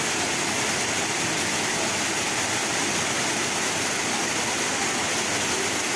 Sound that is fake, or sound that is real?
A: real